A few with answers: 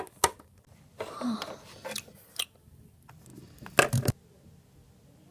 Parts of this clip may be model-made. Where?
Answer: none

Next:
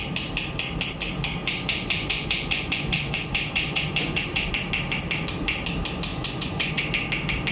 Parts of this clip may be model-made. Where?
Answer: 1.4-4.5; 6.1-6.8

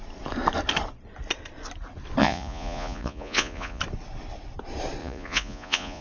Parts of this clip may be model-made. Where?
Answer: 2.2-3.8; 5.0-6.0